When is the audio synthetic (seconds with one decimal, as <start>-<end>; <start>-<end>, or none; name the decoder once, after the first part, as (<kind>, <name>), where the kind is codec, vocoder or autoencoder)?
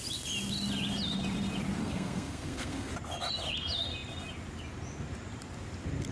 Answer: 1.8-2.9 (codec, SNAC)